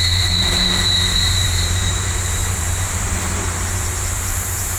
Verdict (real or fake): fake